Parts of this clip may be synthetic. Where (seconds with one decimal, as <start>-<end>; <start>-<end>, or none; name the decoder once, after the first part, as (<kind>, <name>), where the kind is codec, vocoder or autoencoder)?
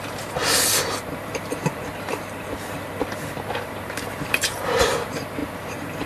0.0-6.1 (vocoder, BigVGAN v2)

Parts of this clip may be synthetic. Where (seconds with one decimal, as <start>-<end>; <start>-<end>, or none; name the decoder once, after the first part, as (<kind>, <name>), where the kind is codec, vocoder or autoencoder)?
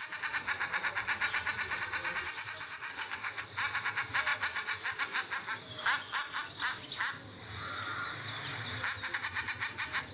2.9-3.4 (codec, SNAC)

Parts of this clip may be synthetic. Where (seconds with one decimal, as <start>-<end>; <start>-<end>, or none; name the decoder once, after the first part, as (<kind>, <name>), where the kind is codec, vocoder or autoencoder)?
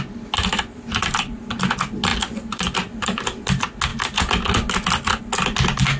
0.5-1.4 (vocoder, BigVGAN v2); 2.1-3.4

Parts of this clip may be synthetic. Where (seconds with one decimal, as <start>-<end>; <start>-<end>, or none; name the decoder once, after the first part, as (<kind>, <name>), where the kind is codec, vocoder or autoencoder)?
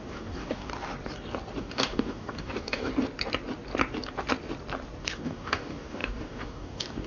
0.0-0.7 (codec, DAC); 1.6-2.9; 5.0-7.1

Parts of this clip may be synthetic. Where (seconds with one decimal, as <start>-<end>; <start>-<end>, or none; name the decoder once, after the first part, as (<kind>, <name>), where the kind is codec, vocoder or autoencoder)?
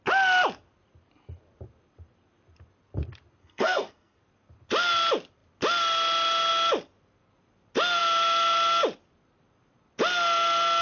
3.4-4.2 (codec, SNAC)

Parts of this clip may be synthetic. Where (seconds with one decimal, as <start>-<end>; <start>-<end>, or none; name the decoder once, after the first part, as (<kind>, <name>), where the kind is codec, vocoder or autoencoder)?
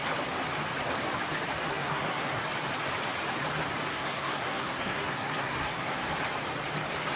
1.7-2.4 (codec, SNAC); 3.9-6.1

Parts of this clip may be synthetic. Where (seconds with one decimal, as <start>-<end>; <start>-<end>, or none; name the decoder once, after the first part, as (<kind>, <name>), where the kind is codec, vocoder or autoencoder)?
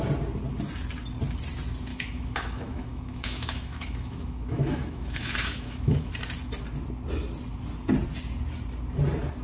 1.9-6.1 (autoencoder, DAC-VAE)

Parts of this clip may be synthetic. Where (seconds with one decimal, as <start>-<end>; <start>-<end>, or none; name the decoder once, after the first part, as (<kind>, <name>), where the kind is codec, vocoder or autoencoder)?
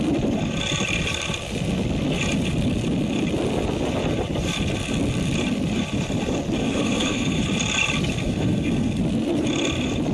6.6-7.4 (codec, SNAC); 8.2-9.0